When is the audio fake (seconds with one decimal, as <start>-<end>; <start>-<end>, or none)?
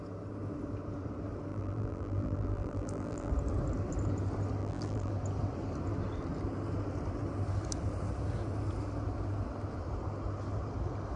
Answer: 1.5-3.3; 4.6-5.1